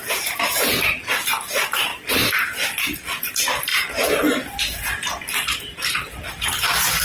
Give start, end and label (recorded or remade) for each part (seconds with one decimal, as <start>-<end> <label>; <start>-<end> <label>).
0.0-1.9 remade; 1.9-3.2 recorded; 3.2-7.0 remade